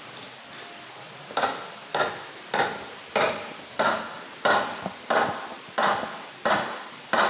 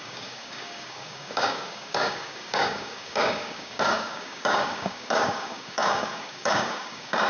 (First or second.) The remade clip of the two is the second